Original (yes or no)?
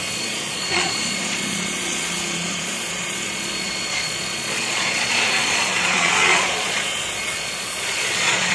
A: no